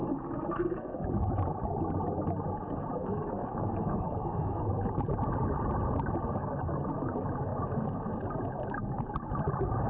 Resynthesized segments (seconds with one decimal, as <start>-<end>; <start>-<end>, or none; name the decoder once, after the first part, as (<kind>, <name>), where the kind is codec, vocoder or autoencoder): 0.0-1.1 (codec, DAC); 3.0-4.7; 6.4-6.9